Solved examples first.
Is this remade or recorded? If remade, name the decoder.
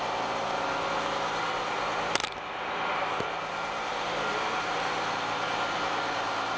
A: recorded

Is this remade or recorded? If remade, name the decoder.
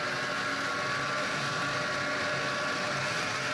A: recorded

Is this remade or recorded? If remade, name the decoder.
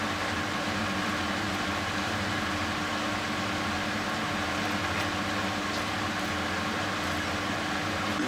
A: recorded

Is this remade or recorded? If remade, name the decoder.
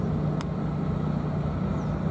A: recorded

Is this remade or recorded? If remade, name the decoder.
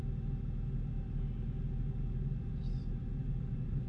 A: recorded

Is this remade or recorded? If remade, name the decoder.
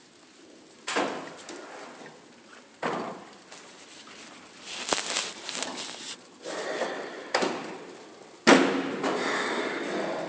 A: recorded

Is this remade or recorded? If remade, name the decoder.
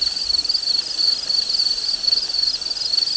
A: recorded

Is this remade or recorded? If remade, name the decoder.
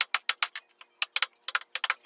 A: recorded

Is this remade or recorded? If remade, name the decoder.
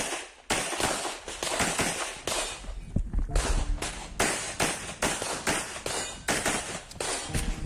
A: recorded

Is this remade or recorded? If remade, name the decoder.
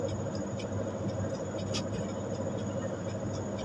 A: recorded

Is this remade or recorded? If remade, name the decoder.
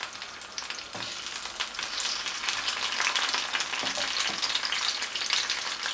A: recorded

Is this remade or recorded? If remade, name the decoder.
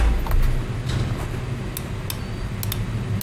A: recorded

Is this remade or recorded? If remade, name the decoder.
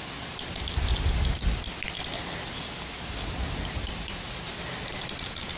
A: recorded